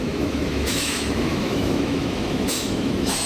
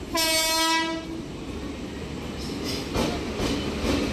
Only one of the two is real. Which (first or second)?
second